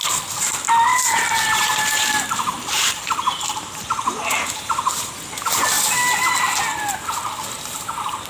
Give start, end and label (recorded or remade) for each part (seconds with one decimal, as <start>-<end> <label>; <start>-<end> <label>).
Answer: 0.0-0.9 recorded; 0.9-5.1 remade; 5.1-8.3 recorded